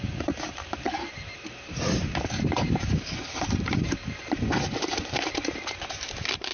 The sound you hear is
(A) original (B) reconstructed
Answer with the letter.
B